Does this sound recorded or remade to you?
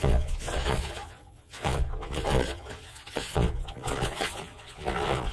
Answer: remade